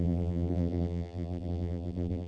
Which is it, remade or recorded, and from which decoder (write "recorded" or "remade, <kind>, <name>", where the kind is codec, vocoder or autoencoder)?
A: remade, vocoder, BigVGAN v2